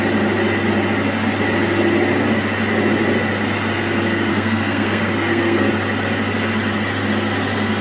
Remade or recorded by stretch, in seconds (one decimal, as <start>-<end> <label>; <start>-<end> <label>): 0.0-4.3 recorded; 4.3-5.7 remade; 5.7-7.8 recorded